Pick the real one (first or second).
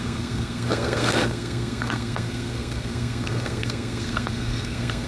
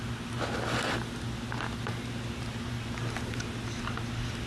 second